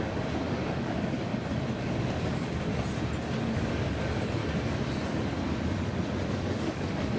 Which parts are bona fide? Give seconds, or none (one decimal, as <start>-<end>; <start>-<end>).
1.3-1.8; 2.7-3.4; 4.4-6.3